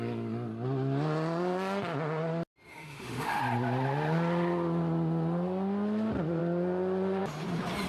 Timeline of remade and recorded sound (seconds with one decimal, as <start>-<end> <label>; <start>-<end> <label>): 0.0-2.7 recorded; 2.7-3.4 remade; 3.4-7.9 recorded